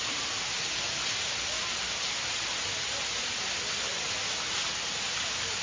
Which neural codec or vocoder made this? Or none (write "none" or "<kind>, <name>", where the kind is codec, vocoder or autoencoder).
none